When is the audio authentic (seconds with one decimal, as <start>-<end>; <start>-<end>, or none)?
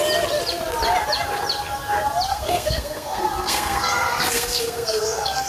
0.0-2.3